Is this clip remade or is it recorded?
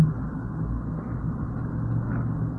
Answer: recorded